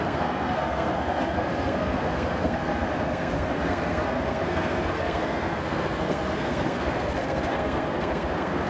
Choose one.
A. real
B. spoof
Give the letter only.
B